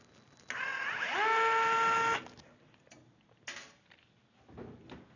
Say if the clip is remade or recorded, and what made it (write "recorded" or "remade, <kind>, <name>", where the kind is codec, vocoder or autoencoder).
recorded